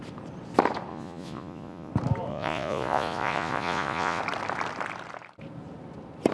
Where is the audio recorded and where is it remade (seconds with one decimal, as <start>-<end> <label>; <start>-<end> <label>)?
0.0-0.9 recorded; 0.9-1.9 remade; 1.9-2.3 recorded; 2.3-4.2 remade; 4.2-6.3 recorded

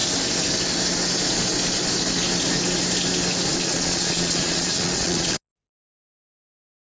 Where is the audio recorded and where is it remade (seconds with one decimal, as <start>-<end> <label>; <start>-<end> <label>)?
0.0-3.5 recorded; 3.5-5.4 remade; 5.4-6.9 recorded

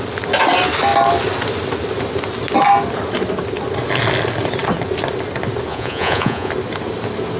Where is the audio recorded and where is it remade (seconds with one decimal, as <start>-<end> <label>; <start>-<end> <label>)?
0.0-5.7 recorded; 5.7-6.5 remade; 6.5-7.4 recorded

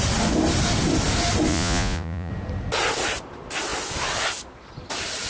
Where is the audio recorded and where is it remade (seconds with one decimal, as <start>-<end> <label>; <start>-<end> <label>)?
0.0-1.5 recorded; 1.5-2.3 remade; 2.3-5.3 recorded

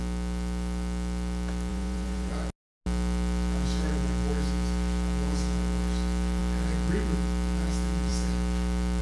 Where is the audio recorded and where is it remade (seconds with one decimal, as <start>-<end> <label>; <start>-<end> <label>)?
0.0-1.7 recorded; 1.7-2.3 remade; 2.3-9.0 recorded